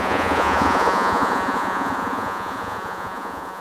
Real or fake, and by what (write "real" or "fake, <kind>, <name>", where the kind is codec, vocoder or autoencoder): fake, vocoder, Vocos